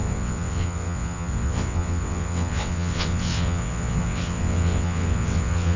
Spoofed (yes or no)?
yes